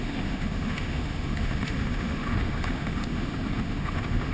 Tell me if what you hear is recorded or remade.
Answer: remade